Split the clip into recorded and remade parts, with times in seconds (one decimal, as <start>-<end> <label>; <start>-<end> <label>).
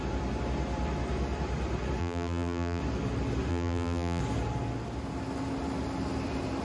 0.0-2.0 recorded; 2.0-2.8 remade; 2.8-3.5 recorded; 3.5-4.2 remade; 4.2-6.6 recorded